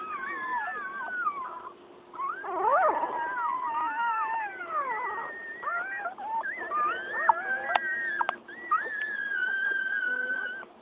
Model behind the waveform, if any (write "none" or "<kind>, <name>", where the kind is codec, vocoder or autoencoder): none